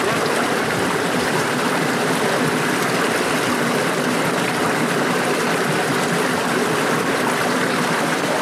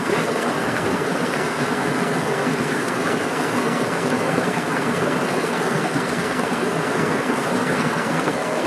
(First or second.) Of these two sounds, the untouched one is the first